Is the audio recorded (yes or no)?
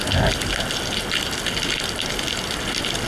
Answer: yes